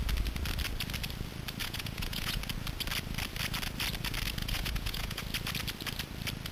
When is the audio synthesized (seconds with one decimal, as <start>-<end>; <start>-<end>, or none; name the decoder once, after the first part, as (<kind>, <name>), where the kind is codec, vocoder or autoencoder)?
1.6-2.4 (vocoder, Vocos); 4.4-5.2

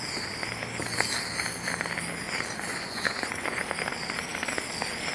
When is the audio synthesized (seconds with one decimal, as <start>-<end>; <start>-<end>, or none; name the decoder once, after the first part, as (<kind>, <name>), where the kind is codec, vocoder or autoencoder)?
2.7-3.6 (vocoder, Vocos)

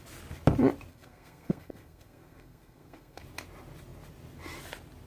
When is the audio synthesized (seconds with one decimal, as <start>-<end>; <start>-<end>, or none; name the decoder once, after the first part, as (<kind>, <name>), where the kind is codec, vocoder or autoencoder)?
0.9-3.2 (codec, SNAC)

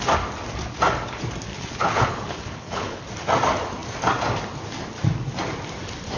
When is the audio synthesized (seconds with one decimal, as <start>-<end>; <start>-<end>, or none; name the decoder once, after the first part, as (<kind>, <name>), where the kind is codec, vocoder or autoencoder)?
1.5-3.0 (codec, HILCodec)

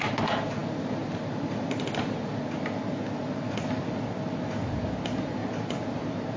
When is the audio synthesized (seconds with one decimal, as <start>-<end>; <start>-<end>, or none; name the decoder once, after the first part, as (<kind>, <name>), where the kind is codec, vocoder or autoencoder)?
none

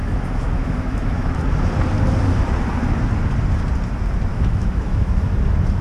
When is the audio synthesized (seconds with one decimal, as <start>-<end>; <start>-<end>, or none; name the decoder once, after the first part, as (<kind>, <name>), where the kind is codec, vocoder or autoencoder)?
0.0-1.3 (autoencoder, DAC-VAE); 4.3-5.3